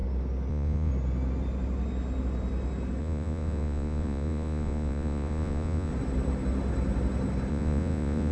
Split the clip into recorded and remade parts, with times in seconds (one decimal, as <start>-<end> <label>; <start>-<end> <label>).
0.0-0.5 recorded; 0.5-0.9 remade; 0.9-3.0 recorded; 3.0-5.9 remade; 5.9-7.5 recorded; 7.5-8.3 remade